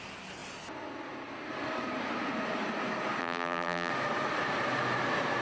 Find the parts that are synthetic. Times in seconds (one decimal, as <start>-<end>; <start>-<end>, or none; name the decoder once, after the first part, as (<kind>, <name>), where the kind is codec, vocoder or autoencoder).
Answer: 3.2-3.9 (vocoder, BigVGAN v2)